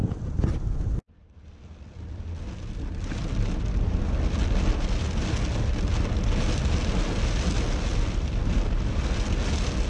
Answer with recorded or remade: recorded